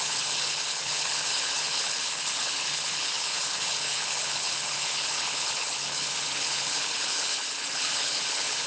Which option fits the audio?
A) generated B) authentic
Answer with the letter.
A